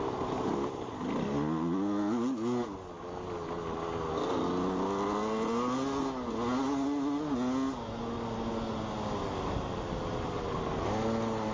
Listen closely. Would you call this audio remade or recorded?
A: recorded